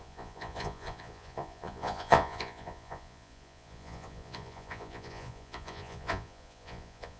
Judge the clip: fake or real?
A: fake